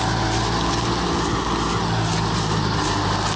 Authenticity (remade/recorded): recorded